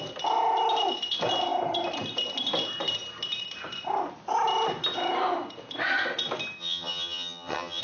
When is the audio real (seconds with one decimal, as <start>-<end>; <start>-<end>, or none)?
0.0-6.6